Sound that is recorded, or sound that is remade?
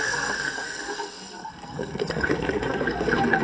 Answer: remade